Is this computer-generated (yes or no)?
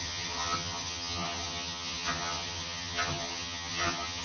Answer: yes